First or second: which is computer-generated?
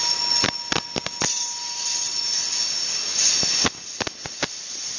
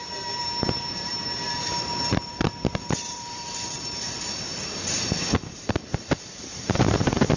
second